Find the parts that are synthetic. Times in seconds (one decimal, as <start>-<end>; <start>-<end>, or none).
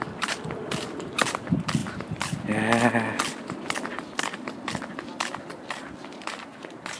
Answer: none